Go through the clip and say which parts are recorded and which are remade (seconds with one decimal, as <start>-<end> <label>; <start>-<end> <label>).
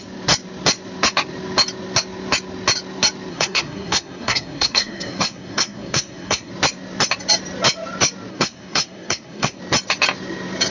0.0-3.3 recorded; 3.3-6.5 remade; 6.5-8.3 recorded; 8.3-9.6 remade; 9.6-10.7 recorded